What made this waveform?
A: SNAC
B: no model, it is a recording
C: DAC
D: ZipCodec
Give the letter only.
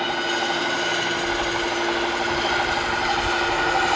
B